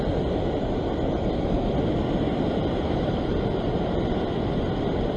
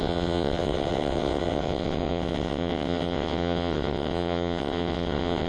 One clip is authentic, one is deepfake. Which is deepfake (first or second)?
second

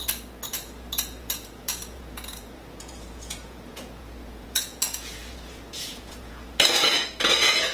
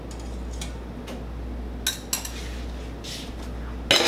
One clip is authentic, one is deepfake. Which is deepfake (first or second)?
first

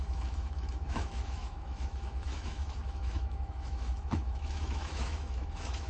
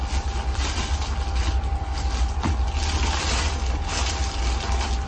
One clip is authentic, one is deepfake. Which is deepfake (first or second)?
first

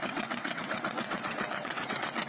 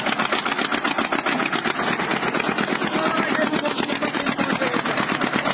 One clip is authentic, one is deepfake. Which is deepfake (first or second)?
first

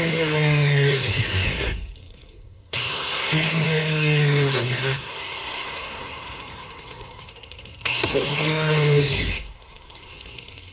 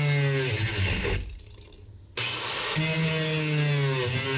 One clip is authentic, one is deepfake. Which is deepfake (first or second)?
first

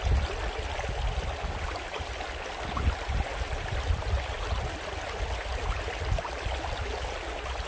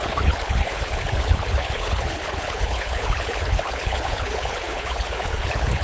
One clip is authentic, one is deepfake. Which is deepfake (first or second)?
second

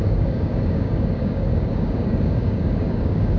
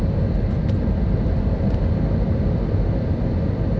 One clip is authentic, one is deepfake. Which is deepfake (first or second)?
first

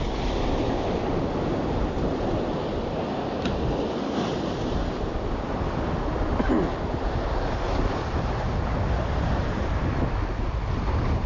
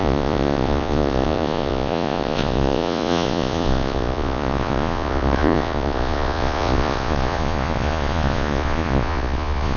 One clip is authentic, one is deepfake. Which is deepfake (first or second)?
second